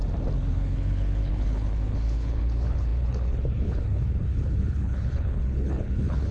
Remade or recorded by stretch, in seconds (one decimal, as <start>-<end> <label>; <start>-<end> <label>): 0.0-0.5 recorded; 0.5-6.3 remade

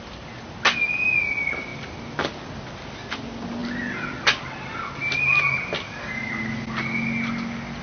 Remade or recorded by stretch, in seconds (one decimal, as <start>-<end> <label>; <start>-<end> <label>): 0.0-7.8 recorded